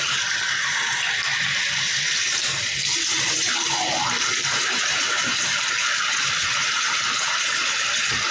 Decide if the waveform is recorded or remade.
remade